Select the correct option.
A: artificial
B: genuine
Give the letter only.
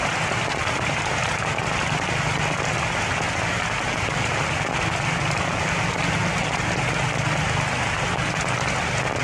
B